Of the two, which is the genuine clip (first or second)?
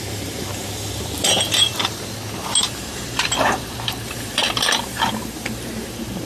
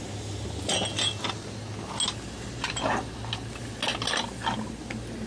second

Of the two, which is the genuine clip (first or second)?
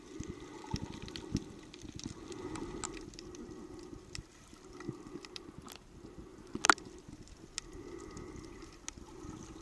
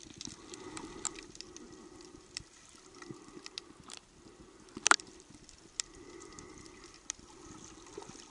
first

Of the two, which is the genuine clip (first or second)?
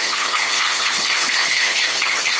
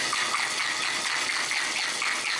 second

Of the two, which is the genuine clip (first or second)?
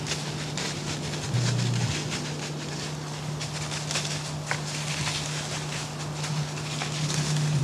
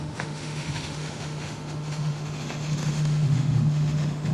first